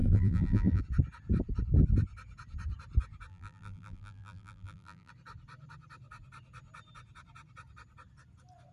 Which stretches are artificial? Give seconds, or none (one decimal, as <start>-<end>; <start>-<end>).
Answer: 0.0-0.8; 3.3-5.1